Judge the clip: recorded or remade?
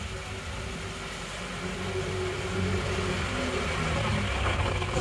recorded